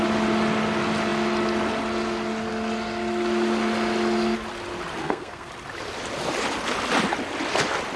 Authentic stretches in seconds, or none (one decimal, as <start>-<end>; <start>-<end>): 0.0-5.0; 5.5-8.0